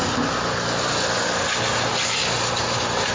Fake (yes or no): no